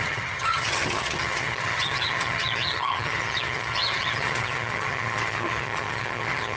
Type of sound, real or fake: fake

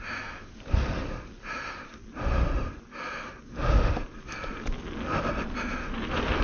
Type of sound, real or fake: real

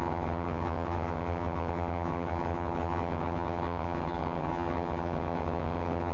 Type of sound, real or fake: fake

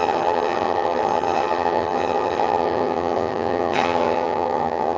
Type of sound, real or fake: fake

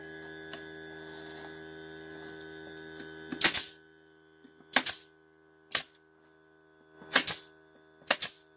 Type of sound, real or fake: real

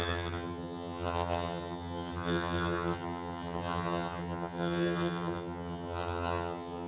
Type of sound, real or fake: fake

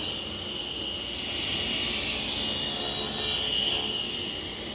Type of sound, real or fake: real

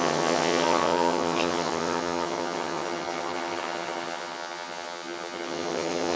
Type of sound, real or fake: fake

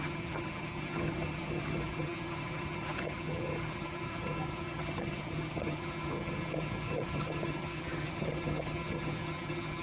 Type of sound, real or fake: fake